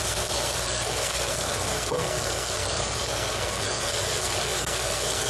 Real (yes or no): no